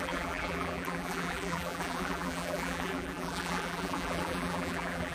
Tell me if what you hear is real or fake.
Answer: fake